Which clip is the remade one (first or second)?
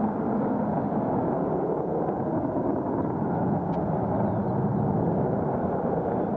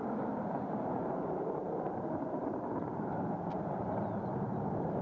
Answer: second